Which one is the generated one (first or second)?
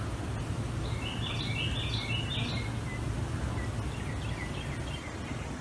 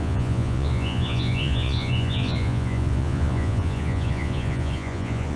second